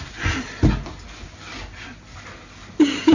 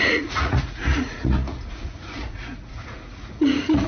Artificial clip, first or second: second